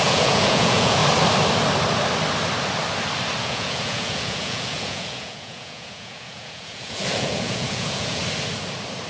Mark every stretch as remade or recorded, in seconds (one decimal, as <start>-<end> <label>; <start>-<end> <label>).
0.0-1.0 remade; 1.0-3.4 recorded; 3.4-8.2 remade; 8.2-9.1 recorded